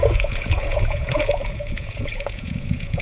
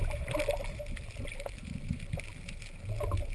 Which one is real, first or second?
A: second